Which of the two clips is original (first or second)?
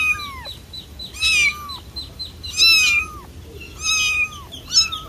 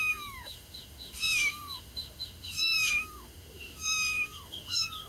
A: first